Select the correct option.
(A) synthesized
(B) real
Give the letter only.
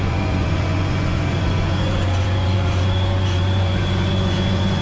A